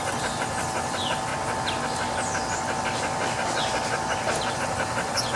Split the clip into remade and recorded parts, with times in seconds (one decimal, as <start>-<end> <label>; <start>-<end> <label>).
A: 0.0-1.3 remade; 1.3-4.5 recorded; 4.5-5.4 remade